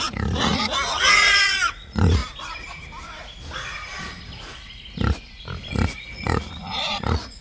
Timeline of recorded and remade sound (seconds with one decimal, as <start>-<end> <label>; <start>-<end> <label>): 0.0-2.2 remade; 2.2-5.7 recorded; 5.7-7.4 remade